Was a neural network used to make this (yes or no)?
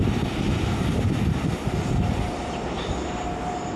no